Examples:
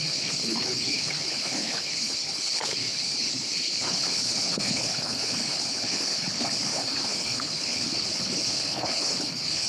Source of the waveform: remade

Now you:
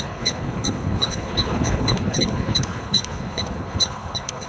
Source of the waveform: remade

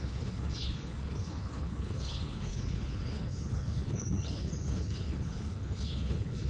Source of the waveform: remade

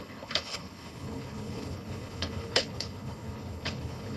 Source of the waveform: remade